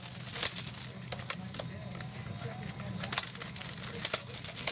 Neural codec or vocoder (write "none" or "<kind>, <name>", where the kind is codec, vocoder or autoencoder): none